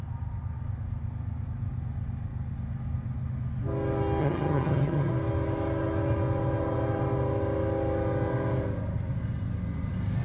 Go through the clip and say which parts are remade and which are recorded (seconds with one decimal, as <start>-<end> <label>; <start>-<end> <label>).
0.0-4.2 recorded; 4.2-5.1 remade; 5.1-10.2 recorded